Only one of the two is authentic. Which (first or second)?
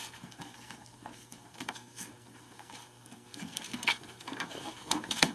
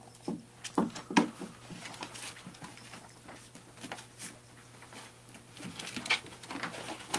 second